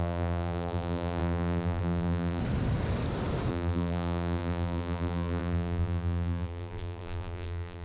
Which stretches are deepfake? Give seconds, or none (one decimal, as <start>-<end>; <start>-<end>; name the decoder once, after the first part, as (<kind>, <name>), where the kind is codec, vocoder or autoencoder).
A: 0.0-2.4 (vocoder, BigVGAN v2); 3.5-7.8